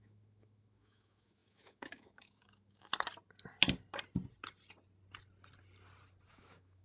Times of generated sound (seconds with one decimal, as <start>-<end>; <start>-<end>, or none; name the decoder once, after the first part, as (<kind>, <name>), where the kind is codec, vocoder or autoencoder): 0.0-2.9 (autoencoder, DAC-VAE); 6.3-6.8